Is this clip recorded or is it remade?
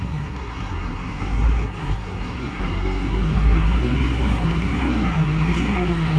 remade